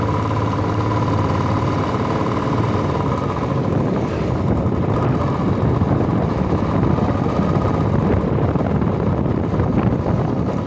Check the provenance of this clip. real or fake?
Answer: real